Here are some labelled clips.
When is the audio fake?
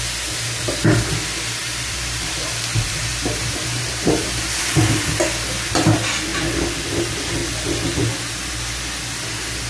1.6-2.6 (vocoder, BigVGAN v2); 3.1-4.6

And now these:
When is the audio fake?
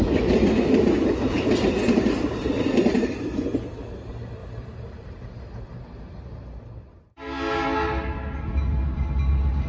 4.4-7.0 (vocoder, BigVGAN v2)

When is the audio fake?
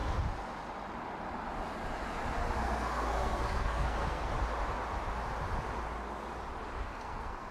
2.6-4.3 (codec, SNAC); 6.8-7.5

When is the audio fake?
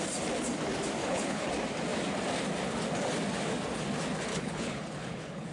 1.0-1.5 (codec, HILCodec); 4.3-5.5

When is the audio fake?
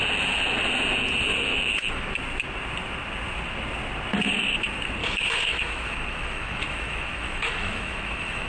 1.3-2.1 (autoencoder, DAC-VAE); 5.0-8.5